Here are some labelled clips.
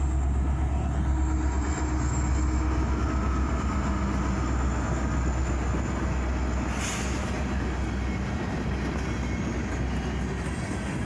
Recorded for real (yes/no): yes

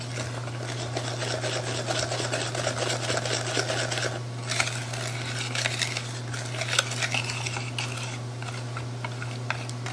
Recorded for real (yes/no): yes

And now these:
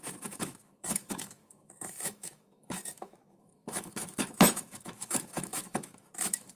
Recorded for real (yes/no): no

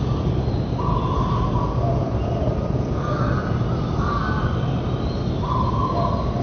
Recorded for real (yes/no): yes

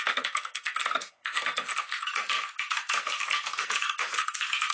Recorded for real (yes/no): no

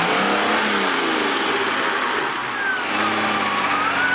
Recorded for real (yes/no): yes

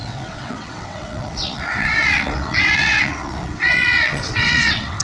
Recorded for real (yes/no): no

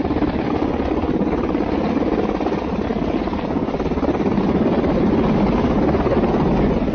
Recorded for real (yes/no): yes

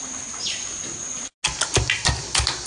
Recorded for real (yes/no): yes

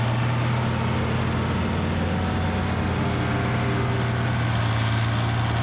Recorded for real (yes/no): yes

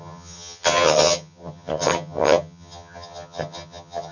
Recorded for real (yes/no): no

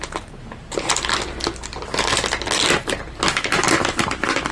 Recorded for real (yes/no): yes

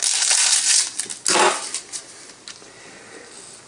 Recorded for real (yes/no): yes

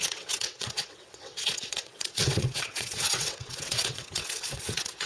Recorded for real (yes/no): no